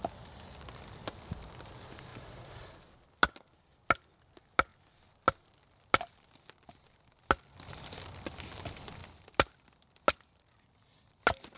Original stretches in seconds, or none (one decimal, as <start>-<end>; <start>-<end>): 0.0-2.1; 2.8-11.6